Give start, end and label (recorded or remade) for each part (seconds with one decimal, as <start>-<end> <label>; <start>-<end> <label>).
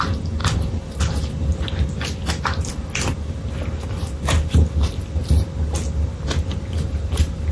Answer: 0.0-0.4 recorded; 0.4-1.0 remade; 1.0-1.5 recorded; 1.5-3.1 remade; 3.1-7.5 recorded